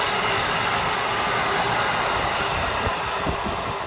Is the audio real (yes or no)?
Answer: yes